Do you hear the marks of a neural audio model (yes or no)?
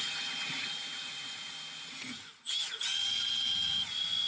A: yes